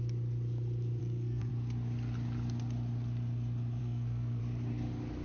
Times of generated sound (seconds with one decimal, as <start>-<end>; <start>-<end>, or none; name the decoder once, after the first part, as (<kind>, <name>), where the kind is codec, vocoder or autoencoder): 1.0-1.5 (codec, SNAC); 3.8-4.4